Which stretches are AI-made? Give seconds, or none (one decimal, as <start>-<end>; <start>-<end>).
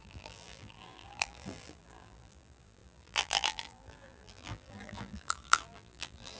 0.0-6.4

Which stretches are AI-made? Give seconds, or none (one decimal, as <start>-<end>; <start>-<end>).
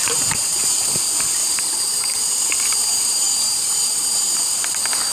0.0-0.8; 1.4-4.4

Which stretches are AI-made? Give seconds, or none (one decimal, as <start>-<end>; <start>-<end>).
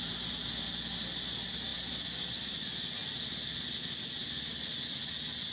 1.7-2.2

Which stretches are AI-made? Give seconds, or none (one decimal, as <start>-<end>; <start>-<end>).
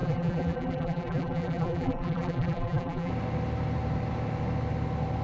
0.0-3.1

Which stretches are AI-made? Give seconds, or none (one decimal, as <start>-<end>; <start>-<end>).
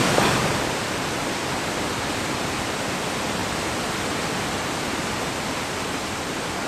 0.0-3.4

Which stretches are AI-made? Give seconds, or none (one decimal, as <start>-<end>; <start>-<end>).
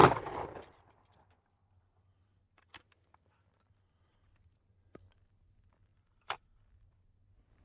5.9-6.9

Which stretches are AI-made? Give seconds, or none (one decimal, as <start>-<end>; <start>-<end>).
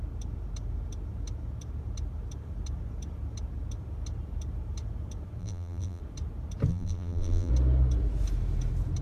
5.4-6.0; 6.7-7.5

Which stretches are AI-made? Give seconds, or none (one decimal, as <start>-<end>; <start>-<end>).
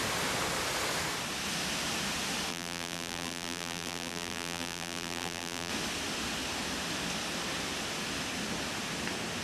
2.5-5.7